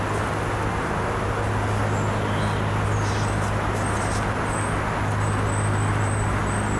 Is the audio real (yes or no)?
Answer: yes